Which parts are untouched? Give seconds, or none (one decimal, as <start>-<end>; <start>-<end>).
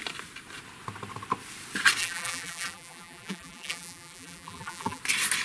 0.0-2.0; 5.0-5.4